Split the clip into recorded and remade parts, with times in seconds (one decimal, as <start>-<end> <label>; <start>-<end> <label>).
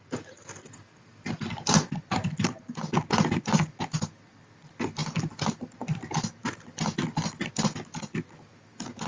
0.0-9.1 recorded